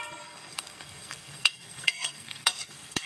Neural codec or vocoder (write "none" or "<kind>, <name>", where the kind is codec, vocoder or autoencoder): codec, SNAC